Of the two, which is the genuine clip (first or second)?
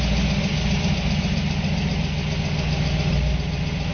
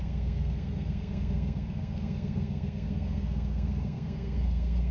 first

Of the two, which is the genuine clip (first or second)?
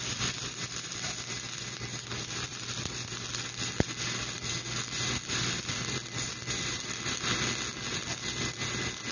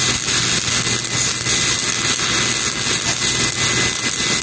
second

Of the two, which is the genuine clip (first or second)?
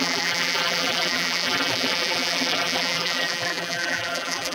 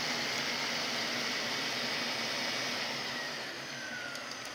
second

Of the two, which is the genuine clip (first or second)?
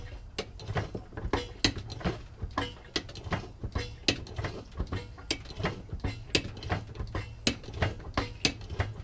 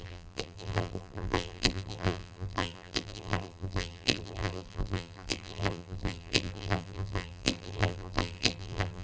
first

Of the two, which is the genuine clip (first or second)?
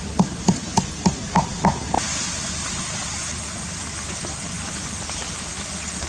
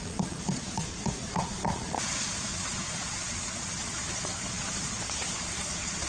first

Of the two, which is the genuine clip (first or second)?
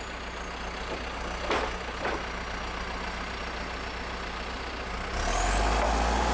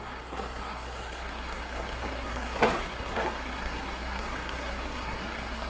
first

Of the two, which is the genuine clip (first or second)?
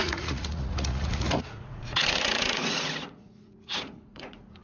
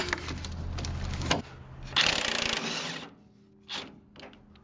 second